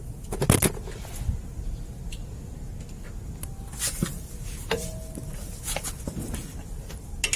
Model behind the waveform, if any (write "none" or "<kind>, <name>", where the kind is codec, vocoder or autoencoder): none